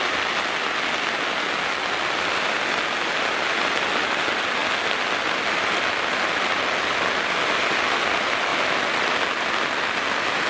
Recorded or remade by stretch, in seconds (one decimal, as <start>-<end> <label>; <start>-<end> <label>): 0.0-10.5 recorded